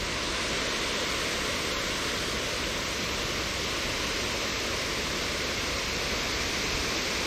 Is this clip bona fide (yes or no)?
yes